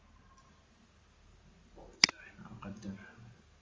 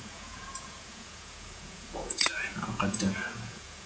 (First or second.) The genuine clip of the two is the first